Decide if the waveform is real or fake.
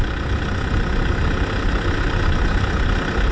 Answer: real